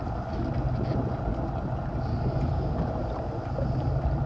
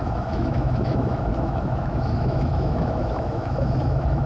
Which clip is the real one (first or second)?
first